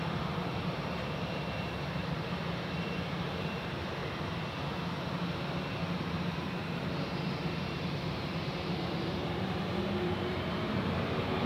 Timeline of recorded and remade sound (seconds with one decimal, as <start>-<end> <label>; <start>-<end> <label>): 0.0-4.0 remade; 4.0-5.9 recorded; 5.9-11.5 remade